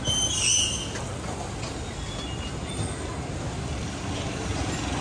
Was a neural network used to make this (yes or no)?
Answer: no